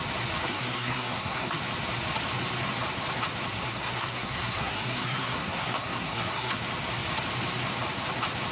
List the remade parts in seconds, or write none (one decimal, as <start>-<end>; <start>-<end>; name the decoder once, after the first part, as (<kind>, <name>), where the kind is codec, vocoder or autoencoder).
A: 0.4-1.6 (codec, SNAC); 3.5-6.6